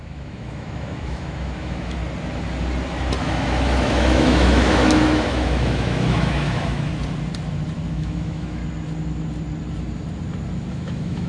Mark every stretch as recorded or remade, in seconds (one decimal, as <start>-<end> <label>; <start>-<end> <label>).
0.0-2.0 remade; 2.0-3.2 recorded; 3.2-6.9 remade; 6.9-7.9 recorded; 7.9-8.6 remade; 8.6-10.7 recorded; 10.7-11.3 remade